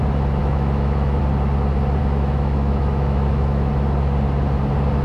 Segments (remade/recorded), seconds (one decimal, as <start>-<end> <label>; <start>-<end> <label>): 0.0-0.4 recorded; 0.4-1.2 remade; 1.2-2.0 recorded; 2.0-3.7 remade; 3.7-5.0 recorded